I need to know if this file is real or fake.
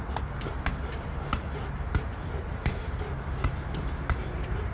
real